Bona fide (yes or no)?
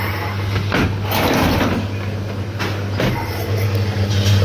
yes